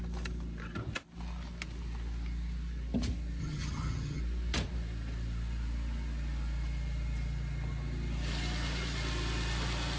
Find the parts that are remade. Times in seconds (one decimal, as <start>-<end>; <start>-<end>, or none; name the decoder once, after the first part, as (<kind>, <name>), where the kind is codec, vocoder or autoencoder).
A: 3.4-4.2 (vocoder, HiFi-GAN)